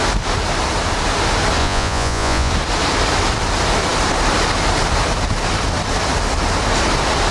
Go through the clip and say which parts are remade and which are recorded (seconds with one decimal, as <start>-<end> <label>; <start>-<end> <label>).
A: 0.0-1.6 recorded; 1.6-2.5 remade; 2.5-7.3 recorded